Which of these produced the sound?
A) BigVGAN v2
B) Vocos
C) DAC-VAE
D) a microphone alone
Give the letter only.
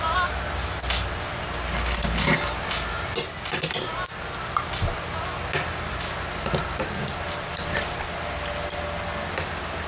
D